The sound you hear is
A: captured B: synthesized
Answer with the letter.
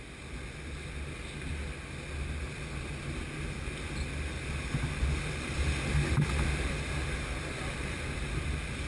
A